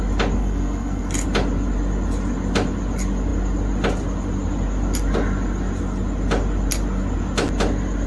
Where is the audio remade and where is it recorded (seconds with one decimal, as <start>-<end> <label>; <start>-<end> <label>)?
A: 0.0-0.4 recorded; 0.4-1.1 remade; 1.1-8.1 recorded